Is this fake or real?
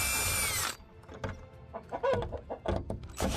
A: real